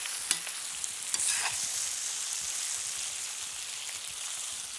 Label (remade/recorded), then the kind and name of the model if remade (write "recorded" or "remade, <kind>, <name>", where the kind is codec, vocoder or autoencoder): recorded